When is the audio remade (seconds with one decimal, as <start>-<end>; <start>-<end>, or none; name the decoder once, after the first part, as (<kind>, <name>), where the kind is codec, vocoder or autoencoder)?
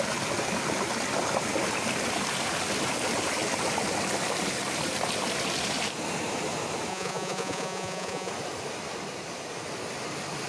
6.9-8.3 (vocoder, Vocos)